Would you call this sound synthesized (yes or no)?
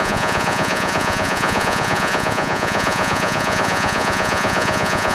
yes